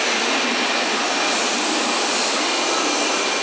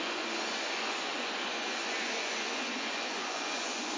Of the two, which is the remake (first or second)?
second